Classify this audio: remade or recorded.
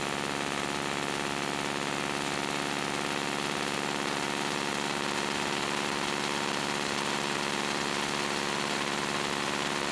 recorded